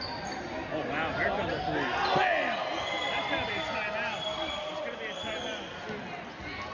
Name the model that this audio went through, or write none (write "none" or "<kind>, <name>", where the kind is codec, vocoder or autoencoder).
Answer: none